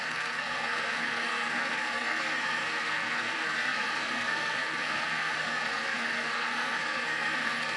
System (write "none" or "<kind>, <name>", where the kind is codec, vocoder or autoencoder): codec, SNAC